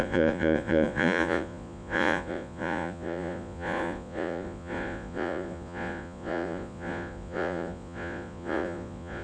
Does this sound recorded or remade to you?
remade